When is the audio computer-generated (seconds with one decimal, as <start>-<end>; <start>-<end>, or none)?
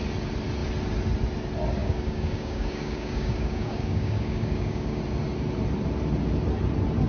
1.8-5.0